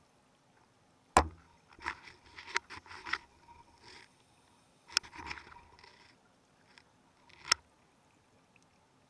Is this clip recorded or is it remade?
recorded